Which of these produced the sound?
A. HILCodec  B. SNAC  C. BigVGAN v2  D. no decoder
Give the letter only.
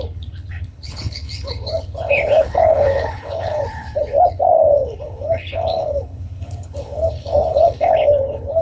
A